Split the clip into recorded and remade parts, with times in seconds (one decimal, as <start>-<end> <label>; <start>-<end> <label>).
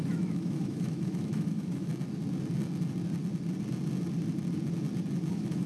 0.0-1.9 remade; 1.9-5.3 recorded; 5.3-5.7 remade